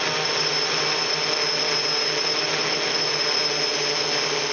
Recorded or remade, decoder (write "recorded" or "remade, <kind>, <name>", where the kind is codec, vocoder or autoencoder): recorded